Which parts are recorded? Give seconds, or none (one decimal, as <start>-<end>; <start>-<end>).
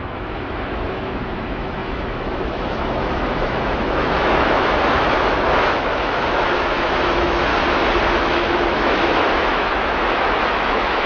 7.5-8.2